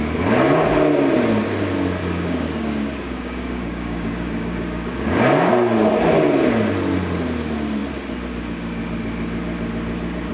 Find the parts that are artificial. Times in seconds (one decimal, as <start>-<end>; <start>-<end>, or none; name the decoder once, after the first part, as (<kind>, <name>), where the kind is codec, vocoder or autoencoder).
2.0-5.5 (codec, DAC)